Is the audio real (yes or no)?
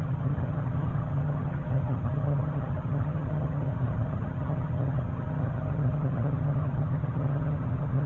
no